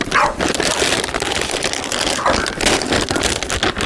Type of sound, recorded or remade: recorded